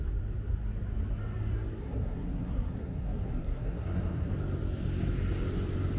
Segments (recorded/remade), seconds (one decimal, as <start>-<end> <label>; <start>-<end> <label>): 0.0-1.8 recorded; 1.8-4.3 remade; 4.3-6.0 recorded